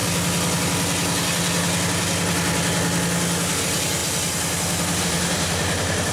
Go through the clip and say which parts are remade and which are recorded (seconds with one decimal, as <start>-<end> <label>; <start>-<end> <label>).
0.0-3.6 recorded; 3.6-4.0 remade; 4.0-5.0 recorded; 5.0-6.1 remade